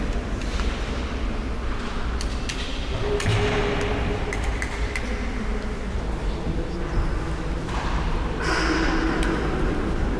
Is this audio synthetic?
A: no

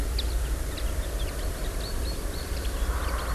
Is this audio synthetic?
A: no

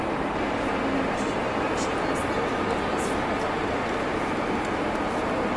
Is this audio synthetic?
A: no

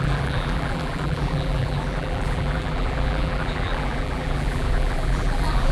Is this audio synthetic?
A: yes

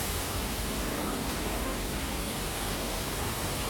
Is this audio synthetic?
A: yes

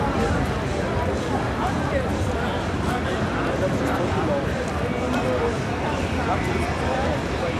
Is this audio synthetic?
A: no